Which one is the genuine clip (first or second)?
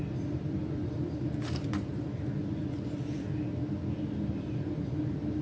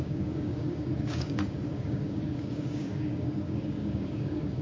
first